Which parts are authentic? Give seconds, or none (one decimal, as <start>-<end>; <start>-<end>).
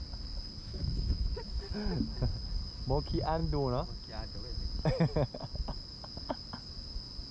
0.0-0.6; 1.6-7.3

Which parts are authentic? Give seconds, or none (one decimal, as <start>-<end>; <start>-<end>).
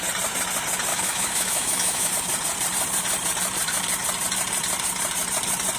0.0-0.9; 2.1-5.8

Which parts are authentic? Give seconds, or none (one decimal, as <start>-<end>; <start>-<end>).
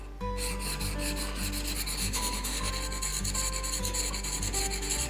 0.0-2.0; 2.7-5.1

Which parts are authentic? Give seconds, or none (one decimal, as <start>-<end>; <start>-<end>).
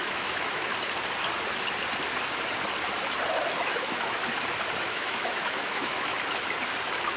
0.7-3.6; 4.2-4.8; 6.1-7.2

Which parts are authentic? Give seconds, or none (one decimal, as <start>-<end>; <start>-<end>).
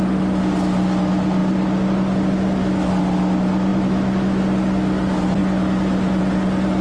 0.0-3.7; 4.4-6.8